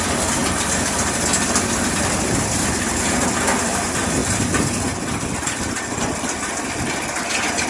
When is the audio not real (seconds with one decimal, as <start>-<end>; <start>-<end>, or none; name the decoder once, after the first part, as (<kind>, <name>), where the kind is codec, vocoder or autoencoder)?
0.0-7.7 (vocoder, BigVGAN v2)